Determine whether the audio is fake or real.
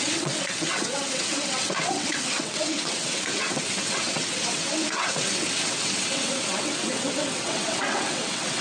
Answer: fake